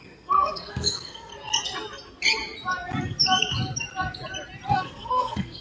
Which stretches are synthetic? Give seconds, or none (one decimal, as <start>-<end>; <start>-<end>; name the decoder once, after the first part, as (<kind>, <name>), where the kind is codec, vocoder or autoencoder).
0.0-1.3 (codec, SNAC); 4.7-5.6